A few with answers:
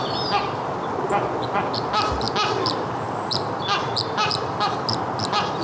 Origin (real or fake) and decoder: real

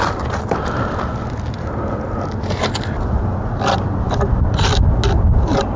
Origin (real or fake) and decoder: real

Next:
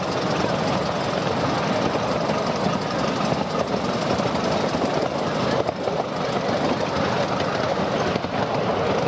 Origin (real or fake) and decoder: real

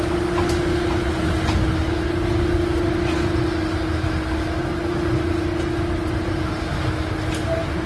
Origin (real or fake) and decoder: real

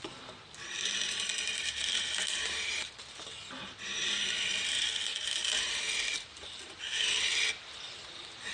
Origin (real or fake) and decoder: real